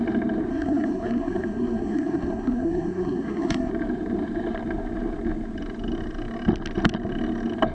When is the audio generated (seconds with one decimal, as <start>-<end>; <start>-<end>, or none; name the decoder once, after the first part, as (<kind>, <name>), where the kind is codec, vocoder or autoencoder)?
0.5-3.7 (codec, SNAC)